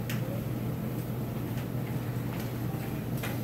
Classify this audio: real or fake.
real